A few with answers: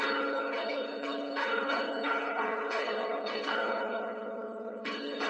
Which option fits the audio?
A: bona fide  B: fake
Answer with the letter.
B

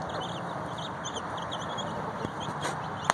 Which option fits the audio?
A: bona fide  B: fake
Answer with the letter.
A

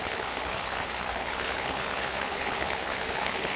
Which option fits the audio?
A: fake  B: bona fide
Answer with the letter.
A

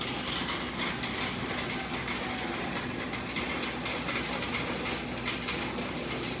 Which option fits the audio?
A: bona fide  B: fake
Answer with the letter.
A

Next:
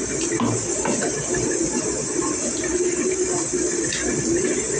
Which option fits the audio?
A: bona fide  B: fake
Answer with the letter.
A